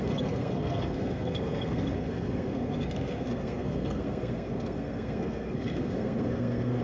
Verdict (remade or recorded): remade